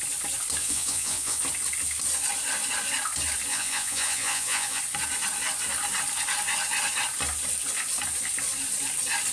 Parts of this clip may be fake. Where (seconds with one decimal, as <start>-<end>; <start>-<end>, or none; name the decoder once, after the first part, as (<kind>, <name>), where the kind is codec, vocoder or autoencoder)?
0.6-1.4 (vocoder, Vocos); 3.5-4.8

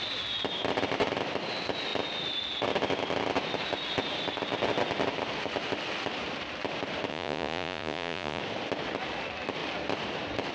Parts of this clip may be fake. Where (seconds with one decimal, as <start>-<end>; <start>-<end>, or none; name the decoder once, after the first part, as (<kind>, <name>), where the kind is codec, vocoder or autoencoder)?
7.1-8.4 (vocoder, Vocos)

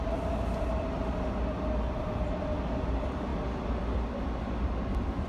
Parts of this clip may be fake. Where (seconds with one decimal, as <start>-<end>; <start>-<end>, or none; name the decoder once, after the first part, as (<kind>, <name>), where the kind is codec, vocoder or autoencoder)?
none

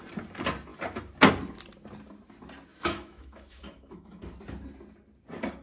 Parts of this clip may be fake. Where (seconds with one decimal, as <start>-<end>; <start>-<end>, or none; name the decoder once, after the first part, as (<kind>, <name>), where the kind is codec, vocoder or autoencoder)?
2.7-4.2 (autoencoder, DAC-VAE)

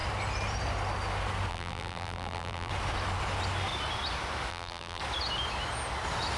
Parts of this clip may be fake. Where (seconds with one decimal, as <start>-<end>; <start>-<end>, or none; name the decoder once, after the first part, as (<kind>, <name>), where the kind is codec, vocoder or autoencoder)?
1.5-2.7 (vocoder, BigVGAN v2); 4.5-5.0

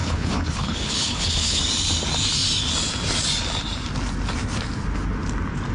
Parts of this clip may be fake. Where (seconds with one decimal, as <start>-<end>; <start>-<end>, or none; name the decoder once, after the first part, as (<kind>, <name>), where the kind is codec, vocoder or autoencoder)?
0.0-1.6 (codec, HILCodec)

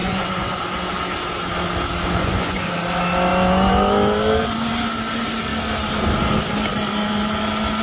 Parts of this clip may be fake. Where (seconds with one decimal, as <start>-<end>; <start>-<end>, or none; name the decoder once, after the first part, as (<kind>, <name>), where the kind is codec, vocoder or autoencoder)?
0.0-0.6 (vocoder, Vocos); 2.2-2.7